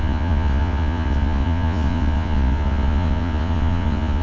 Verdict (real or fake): fake